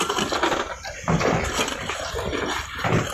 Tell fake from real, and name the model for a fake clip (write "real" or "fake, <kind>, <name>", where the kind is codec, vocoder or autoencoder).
real